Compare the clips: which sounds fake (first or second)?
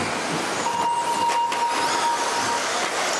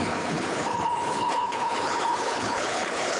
second